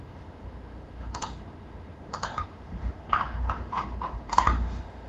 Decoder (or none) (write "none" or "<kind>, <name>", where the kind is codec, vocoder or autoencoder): autoencoder, DAC-VAE